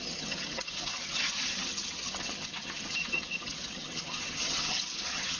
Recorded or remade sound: remade